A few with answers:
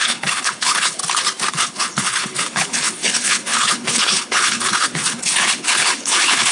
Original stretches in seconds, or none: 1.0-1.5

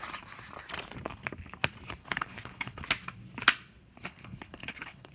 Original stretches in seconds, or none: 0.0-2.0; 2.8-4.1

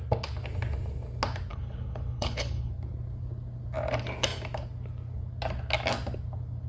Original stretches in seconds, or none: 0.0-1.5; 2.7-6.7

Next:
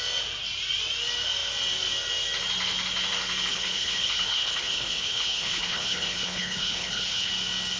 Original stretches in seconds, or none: 0.0-3.5; 7.3-7.8

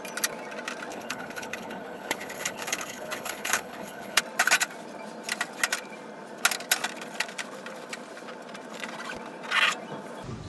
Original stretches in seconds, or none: 0.0-0.9; 4.2-10.5

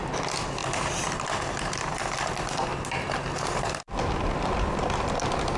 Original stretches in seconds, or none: 0.0-5.6